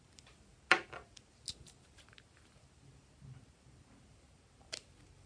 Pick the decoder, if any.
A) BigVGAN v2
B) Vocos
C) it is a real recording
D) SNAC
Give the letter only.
C